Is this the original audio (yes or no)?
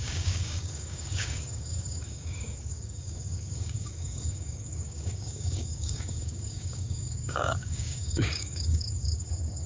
no